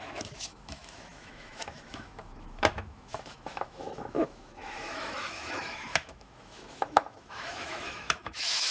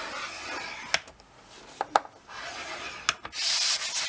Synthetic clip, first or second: first